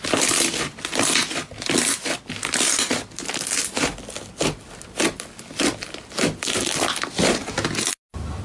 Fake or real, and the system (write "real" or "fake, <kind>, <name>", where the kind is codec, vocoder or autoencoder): real